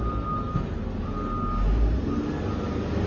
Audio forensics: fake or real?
real